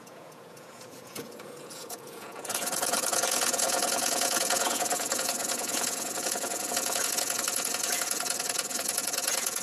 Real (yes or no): no